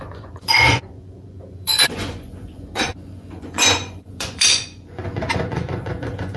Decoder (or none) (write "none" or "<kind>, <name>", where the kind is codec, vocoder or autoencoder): vocoder, Vocos